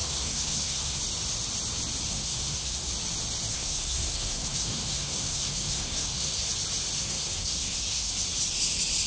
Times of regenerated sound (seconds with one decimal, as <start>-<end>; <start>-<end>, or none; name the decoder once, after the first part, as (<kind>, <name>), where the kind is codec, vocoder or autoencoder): 0.0-1.0 (codec, SNAC); 2.1-2.9; 3.5-6.5; 7.0-8.1